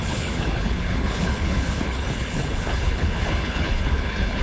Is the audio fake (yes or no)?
yes